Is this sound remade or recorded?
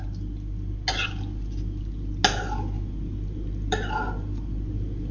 recorded